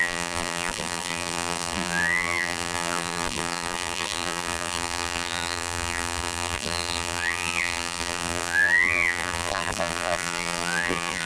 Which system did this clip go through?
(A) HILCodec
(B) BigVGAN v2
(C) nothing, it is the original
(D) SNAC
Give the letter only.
B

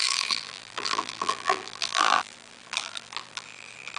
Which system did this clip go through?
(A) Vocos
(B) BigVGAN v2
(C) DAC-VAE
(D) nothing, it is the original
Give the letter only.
B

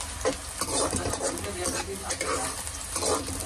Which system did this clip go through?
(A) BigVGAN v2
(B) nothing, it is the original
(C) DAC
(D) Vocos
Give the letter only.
B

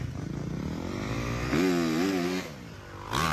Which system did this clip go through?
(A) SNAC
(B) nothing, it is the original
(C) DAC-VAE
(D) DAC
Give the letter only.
B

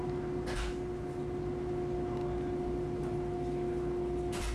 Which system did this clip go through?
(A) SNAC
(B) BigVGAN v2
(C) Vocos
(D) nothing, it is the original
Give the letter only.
D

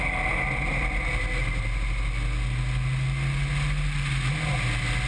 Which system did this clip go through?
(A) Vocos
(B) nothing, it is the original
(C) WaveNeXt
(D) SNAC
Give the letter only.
B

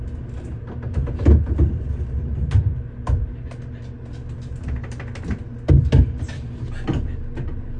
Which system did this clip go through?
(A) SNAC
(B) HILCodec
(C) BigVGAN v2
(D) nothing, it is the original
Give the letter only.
D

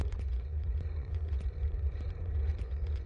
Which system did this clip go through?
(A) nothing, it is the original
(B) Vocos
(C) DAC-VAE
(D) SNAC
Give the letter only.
B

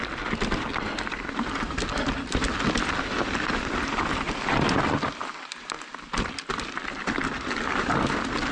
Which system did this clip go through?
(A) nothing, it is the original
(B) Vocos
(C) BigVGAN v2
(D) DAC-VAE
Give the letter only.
A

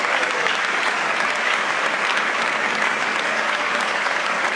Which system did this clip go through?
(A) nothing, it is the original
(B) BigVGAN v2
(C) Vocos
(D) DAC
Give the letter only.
D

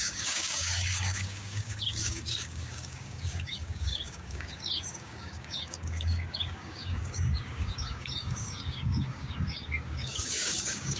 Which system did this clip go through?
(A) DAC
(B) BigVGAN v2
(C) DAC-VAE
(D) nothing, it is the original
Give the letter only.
A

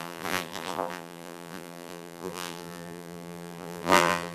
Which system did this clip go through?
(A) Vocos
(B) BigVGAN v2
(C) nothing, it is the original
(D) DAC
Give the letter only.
B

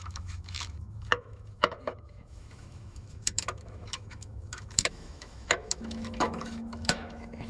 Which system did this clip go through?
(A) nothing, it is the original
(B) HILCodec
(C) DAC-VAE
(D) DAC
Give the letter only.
C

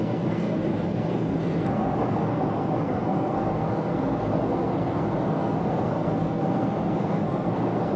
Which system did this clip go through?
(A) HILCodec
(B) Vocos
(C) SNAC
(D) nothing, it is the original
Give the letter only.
C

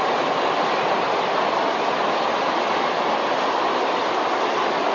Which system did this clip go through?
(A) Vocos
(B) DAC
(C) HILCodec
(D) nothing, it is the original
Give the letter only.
D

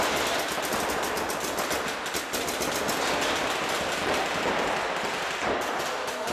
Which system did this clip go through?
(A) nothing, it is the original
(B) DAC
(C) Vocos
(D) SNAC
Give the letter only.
A